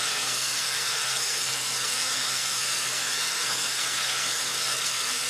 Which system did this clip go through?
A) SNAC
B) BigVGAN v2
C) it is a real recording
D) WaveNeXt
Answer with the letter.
A